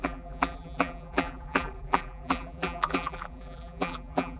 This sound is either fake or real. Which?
fake